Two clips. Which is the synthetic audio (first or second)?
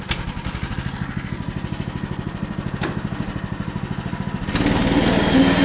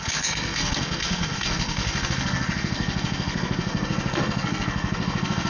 second